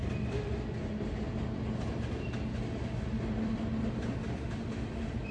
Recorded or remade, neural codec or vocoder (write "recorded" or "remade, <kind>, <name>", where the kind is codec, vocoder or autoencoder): recorded